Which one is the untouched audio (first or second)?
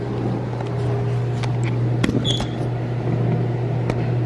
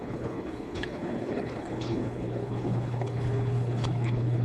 first